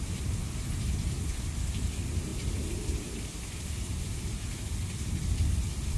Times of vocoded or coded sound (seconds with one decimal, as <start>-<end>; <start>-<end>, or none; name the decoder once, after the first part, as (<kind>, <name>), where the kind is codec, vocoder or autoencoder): 0.0-6.0 (vocoder, BigVGAN v2)